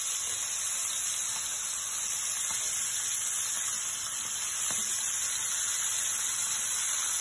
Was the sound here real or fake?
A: real